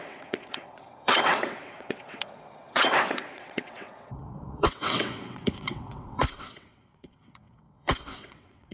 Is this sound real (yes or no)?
no